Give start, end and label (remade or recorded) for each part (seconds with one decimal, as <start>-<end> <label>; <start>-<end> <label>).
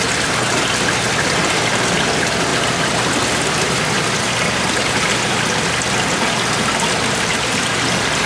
0.0-8.3 recorded